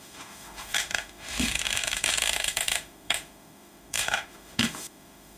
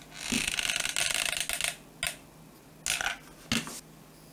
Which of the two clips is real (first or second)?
second